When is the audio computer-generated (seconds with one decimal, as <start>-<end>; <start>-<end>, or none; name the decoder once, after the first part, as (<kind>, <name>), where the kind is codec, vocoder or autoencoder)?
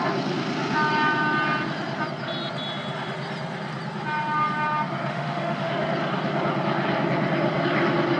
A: 5.1-5.7 (autoencoder, DAC-VAE)